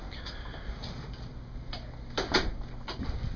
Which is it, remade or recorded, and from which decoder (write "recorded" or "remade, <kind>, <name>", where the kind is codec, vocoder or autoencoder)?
recorded